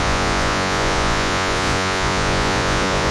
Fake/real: fake